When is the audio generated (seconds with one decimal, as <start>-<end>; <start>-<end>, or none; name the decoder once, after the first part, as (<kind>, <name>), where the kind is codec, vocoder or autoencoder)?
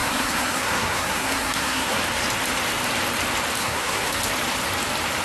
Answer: 0.0-2.0 (codec, SNAC); 3.6-4.2